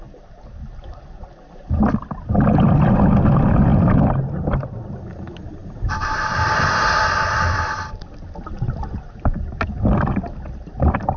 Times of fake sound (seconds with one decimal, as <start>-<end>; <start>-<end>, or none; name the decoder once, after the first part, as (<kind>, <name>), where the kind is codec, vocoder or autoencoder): none